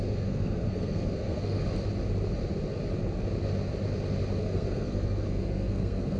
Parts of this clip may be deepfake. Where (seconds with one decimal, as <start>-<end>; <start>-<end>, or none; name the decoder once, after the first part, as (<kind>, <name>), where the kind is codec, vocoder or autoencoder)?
0.0-1.6 (codec, SNAC); 4.4-6.2